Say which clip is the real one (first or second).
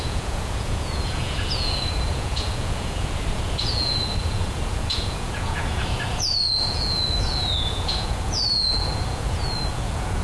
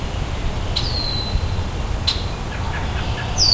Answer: second